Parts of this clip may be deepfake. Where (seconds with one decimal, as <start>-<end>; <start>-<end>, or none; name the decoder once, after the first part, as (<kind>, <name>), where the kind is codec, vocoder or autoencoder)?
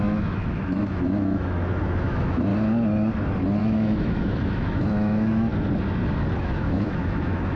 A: 0.0-2.5 (autoencoder, DAC-VAE); 3.6-5.5; 6.4-7.6